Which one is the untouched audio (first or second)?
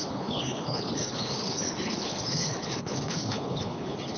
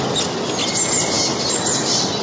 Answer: second